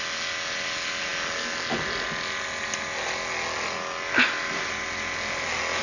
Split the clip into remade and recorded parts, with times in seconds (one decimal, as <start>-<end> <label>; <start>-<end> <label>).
0.0-5.8 recorded